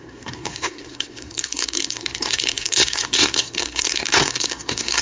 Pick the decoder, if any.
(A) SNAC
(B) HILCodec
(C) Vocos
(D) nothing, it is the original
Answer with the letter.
A